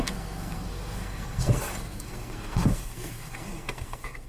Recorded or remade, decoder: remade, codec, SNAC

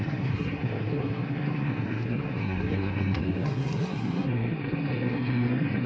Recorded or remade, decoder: remade, codec, SNAC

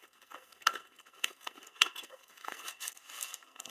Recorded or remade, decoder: remade, codec, SNAC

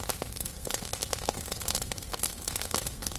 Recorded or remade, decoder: remade, codec, SNAC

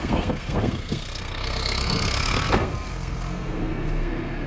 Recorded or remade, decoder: remade, codec, SNAC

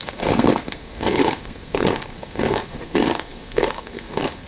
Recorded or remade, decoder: remade, codec, SNAC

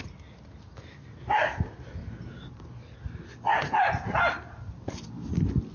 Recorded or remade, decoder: recorded